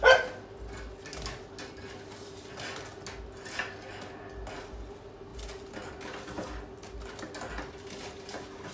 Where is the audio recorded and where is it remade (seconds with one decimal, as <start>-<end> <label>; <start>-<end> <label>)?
0.0-8.7 recorded